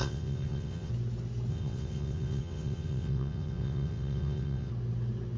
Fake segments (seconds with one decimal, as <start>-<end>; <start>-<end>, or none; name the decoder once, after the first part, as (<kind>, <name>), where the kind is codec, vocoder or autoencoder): 0.0-0.9 (vocoder, WaveNeXt); 1.5-4.7